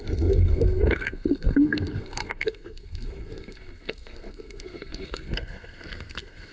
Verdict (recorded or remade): remade